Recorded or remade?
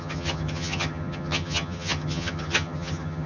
remade